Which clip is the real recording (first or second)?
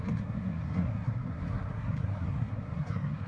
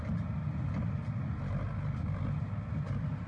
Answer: second